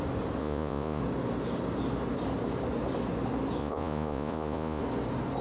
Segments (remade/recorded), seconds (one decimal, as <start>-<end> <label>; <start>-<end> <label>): 0.0-0.4 recorded; 0.4-1.0 remade; 1.0-3.6 recorded; 3.6-4.8 remade; 4.8-5.4 recorded